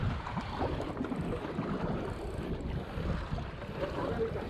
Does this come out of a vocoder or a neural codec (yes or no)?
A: no